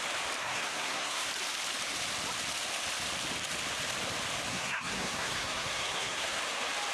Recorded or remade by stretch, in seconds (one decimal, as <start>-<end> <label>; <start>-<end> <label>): 0.0-0.4 recorded; 0.4-1.3 remade; 1.3-4.5 recorded; 4.5-6.4 remade; 6.4-6.9 recorded